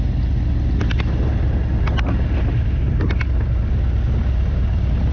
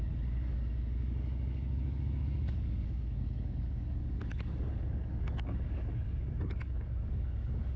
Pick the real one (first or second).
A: first